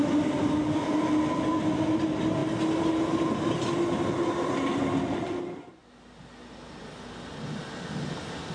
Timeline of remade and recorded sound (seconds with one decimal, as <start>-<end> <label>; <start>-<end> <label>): 0.0-8.5 recorded